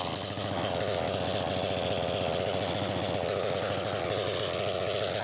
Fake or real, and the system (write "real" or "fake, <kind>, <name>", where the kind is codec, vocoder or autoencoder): real